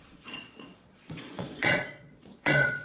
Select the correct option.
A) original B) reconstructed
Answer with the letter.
B